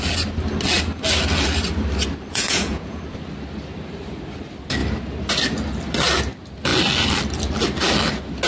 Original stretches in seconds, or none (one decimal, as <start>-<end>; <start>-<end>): 0.0-2.3; 3.0-8.5